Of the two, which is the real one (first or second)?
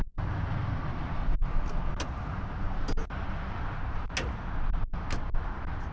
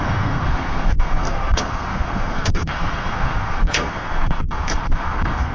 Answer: first